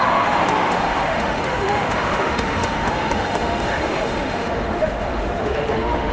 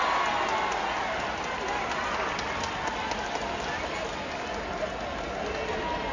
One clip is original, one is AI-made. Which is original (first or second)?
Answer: second